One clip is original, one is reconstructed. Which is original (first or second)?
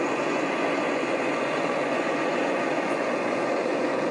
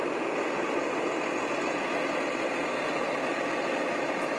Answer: second